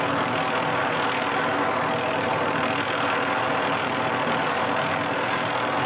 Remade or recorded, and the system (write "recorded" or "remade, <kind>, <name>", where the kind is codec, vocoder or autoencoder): recorded